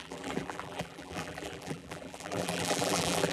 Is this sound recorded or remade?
remade